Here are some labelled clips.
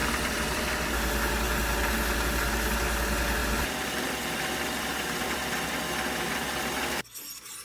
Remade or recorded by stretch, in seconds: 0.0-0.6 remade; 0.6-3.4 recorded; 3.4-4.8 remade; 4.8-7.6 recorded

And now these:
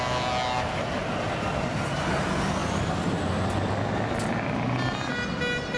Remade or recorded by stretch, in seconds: 0.0-5.8 recorded

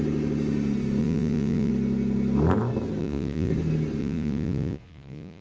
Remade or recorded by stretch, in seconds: 0.0-1.0 recorded; 1.0-1.7 remade; 1.7-3.0 recorded; 3.0-3.5 remade; 3.5-4.0 recorded; 4.0-5.4 remade

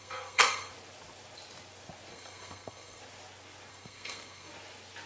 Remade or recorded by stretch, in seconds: 0.0-0.7 remade; 0.7-2.1 recorded; 2.1-3.0 remade; 3.0-3.7 recorded; 3.7-4.5 remade; 4.5-5.1 recorded

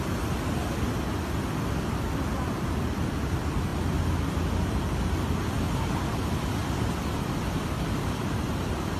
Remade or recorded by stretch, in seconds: 0.0-9.0 recorded

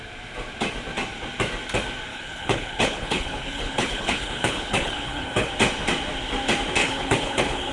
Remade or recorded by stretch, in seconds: 0.0-2.1 recorded; 2.1-5.5 remade; 5.5-6.8 recorded; 6.8-7.7 remade

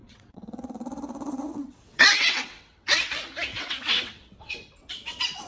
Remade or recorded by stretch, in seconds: 0.0-3.1 remade; 3.1-3.5 recorded; 3.5-5.5 remade

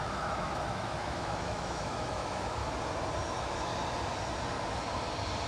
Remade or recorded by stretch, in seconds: 0.0-2.6 remade; 2.6-3.3 recorded; 3.3-3.7 remade; 3.7-5.5 recorded